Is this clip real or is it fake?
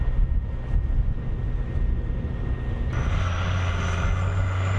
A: real